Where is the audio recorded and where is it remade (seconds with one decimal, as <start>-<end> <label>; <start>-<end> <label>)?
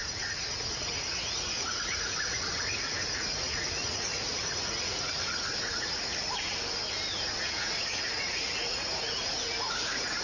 0.0-6.5 remade; 6.5-7.1 recorded; 7.1-10.2 remade